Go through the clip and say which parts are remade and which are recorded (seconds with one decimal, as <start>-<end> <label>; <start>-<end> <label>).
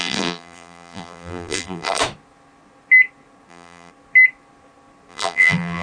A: 0.0-2.0 remade; 2.0-3.5 recorded; 3.5-3.9 remade; 3.9-5.1 recorded; 5.1-5.8 remade